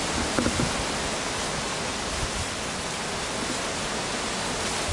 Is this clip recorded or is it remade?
recorded